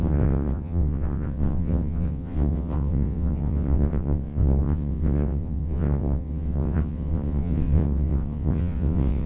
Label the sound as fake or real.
fake